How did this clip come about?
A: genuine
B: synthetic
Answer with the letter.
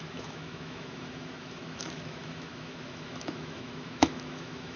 B